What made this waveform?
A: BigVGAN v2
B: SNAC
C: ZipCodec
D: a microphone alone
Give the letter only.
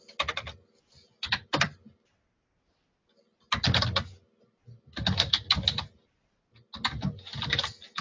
D